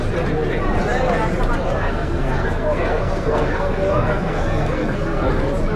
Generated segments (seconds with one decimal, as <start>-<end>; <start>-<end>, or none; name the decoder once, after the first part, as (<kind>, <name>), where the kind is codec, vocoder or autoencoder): 1.8-5.3 (codec, SNAC)